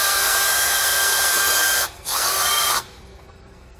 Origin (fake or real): fake